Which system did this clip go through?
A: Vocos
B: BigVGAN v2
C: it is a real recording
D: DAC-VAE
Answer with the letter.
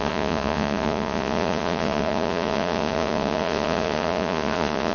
A